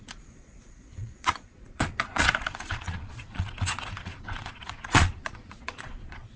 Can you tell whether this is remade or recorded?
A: remade